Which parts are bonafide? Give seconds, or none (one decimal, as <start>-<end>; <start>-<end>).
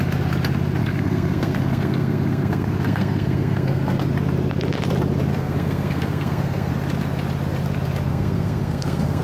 0.0-0.8; 4.1-5.3; 6.7-8.1